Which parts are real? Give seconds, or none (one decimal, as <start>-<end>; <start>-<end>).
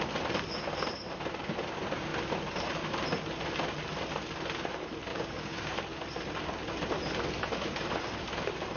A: 0.0-5.1; 5.7-8.8